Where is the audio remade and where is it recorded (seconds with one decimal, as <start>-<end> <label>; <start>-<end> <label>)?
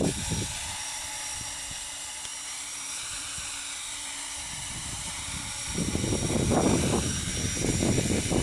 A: 0.0-7.3 remade; 7.3-7.9 recorded; 7.9-8.4 remade